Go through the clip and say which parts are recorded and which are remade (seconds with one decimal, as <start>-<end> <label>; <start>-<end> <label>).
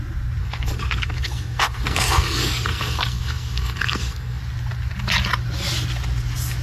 0.0-0.4 recorded; 0.4-4.4 remade; 4.4-6.6 recorded